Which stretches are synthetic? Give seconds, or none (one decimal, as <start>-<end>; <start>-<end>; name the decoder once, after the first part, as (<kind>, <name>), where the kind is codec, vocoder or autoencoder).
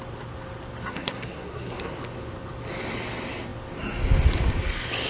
0.9-1.9 (codec, SNAC)